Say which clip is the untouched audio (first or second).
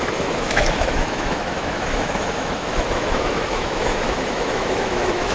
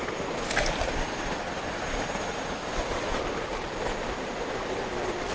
second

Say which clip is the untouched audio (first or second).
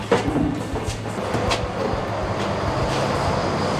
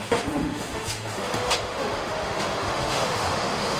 first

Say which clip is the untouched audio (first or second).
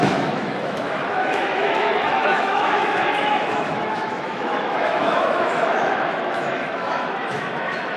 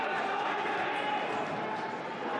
second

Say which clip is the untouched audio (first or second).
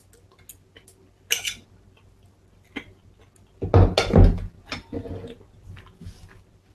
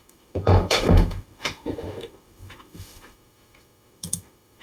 first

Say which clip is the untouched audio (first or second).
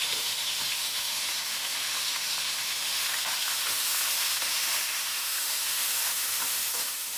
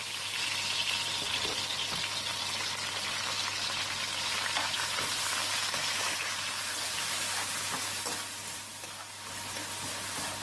second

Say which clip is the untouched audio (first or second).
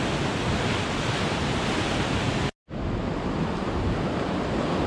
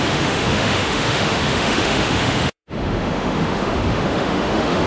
first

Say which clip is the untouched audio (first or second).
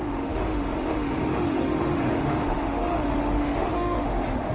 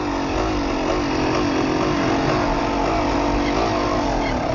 second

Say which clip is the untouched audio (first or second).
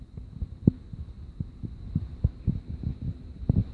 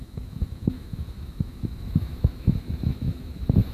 first